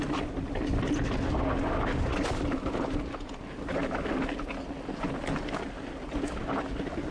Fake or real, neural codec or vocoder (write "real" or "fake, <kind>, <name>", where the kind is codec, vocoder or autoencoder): real